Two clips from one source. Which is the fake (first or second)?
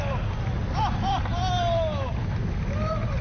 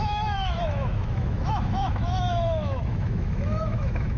second